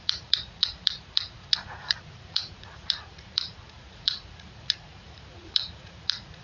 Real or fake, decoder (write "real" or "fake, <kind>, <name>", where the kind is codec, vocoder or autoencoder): fake, vocoder, Vocos